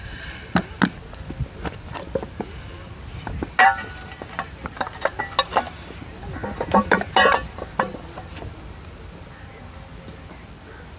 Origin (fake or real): real